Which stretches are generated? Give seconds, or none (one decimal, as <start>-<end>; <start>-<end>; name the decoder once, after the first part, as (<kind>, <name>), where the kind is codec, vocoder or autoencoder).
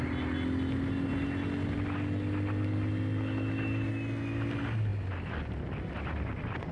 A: none